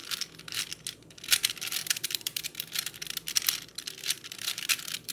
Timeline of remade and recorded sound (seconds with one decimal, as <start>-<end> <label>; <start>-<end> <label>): 0.0-1.8 recorded; 1.8-2.7 remade; 2.7-3.7 recorded; 3.7-5.1 remade

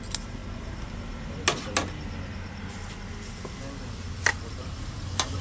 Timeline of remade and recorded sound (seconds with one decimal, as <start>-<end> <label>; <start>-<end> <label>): 0.0-5.4 recorded